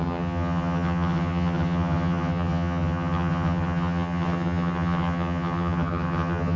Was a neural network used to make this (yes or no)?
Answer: yes